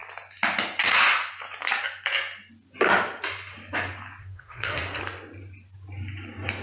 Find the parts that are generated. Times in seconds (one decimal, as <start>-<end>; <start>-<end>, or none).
4.2-5.0